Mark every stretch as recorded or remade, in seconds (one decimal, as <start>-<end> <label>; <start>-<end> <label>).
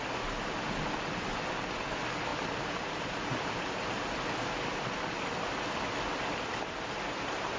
0.0-2.3 recorded; 2.3-5.6 remade; 5.6-7.6 recorded